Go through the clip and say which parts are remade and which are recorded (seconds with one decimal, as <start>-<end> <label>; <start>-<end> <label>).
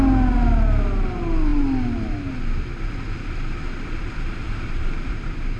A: 0.0-4.4 recorded; 4.4-5.6 remade